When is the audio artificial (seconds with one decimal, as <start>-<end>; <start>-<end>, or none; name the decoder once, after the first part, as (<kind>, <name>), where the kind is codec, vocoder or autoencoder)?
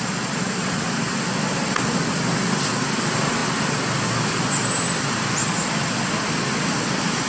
none